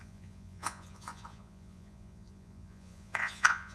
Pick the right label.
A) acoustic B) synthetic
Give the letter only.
B